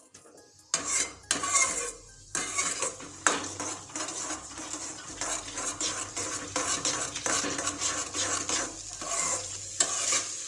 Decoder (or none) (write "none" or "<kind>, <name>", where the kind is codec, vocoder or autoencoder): none